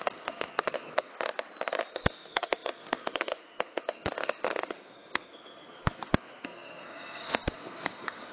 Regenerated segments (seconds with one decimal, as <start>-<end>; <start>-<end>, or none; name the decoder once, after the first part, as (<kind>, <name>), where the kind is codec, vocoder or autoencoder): 0.0-1.1 (codec, SNAC); 1.9-8.3